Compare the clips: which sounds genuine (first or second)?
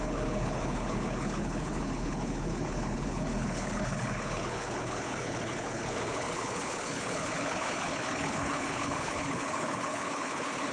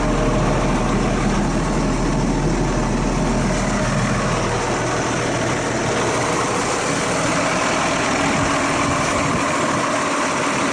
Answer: second